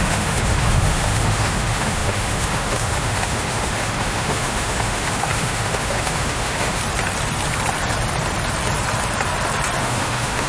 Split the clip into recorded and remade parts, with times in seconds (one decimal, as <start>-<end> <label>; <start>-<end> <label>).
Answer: 0.0-6.8 remade; 6.8-9.8 recorded; 9.8-10.5 remade